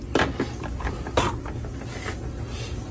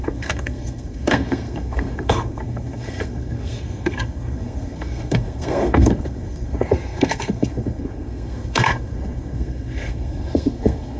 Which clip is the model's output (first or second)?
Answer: second